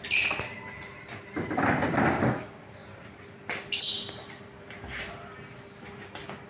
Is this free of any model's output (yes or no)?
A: yes